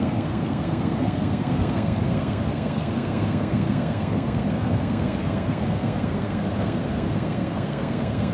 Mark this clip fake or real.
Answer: fake